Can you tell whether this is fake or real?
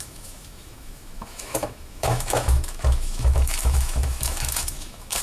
fake